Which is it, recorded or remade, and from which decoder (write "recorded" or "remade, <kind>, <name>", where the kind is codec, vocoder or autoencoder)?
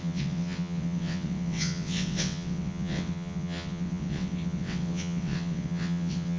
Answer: remade, vocoder, WaveNeXt